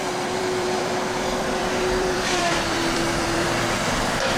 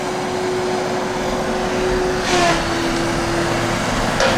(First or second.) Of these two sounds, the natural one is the second